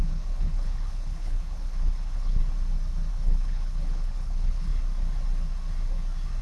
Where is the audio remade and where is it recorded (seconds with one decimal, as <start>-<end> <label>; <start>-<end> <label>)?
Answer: 0.0-2.4 remade; 2.4-3.1 recorded; 3.1-4.7 remade; 4.7-6.4 recorded